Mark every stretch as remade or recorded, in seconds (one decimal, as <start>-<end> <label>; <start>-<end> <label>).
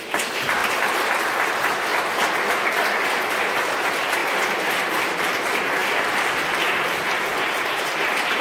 0.0-0.6 recorded; 0.6-1.5 remade; 1.5-8.4 recorded